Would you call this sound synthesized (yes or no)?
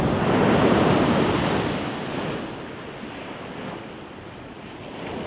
no